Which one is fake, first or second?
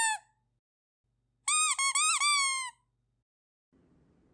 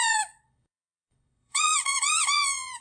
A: second